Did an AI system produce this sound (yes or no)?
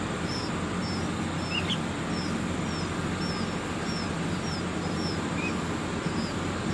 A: no